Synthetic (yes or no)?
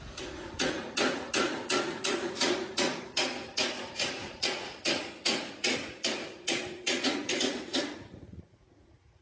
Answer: yes